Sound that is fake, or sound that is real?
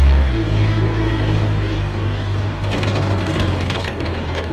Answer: fake